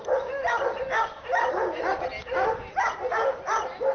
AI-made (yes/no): no